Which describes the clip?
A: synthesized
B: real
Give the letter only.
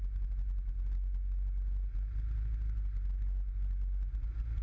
B